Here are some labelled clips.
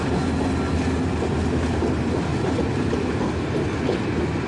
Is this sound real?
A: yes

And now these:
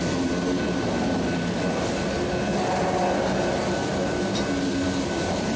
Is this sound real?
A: yes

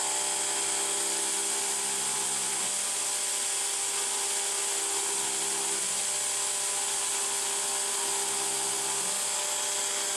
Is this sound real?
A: yes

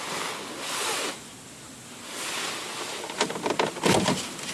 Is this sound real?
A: yes